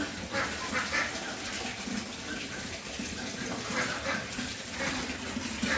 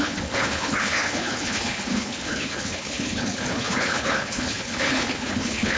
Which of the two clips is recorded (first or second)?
first